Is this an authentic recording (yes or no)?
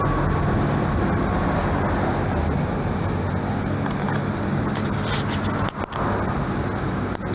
yes